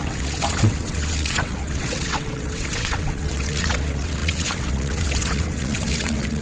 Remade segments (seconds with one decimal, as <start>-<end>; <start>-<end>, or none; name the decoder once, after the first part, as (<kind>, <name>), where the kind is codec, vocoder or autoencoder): 0.0-6.4 (vocoder, WaveNeXt)